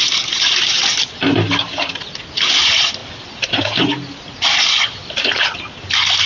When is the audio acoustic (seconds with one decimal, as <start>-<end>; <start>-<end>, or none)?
0.0-3.0; 3.6-6.3